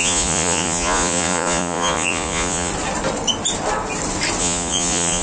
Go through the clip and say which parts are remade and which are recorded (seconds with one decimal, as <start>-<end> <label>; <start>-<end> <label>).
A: 0.0-2.7 remade; 2.7-4.4 recorded; 4.4-5.2 remade